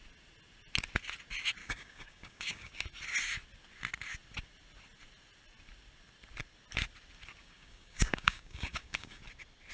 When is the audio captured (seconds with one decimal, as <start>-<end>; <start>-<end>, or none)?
0.0-1.6; 2.7-7.4; 9.2-9.7